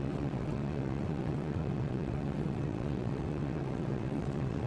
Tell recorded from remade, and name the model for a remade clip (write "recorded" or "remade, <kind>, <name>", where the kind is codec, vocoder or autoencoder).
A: remade, vocoder, WaveNeXt